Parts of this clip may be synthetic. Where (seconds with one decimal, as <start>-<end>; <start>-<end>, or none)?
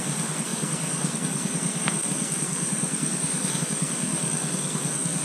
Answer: 0.0-5.2